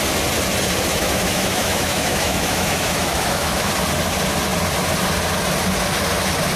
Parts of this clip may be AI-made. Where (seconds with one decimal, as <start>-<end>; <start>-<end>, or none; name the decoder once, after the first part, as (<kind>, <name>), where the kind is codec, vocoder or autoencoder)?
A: 0.9-3.7 (autoencoder, DAC-VAE)